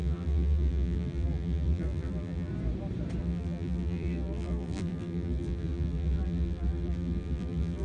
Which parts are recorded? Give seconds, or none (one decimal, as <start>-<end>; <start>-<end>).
2.5-3.2